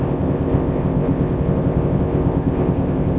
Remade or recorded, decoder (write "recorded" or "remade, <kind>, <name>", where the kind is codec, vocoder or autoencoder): remade, codec, ZipCodec